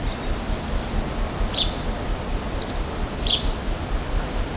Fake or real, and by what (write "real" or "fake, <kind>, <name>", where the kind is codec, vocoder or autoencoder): real